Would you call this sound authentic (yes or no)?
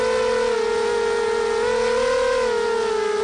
yes